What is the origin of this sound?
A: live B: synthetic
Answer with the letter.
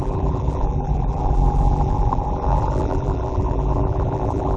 B